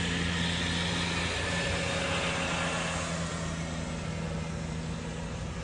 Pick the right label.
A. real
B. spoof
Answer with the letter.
A